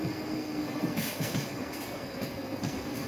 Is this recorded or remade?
remade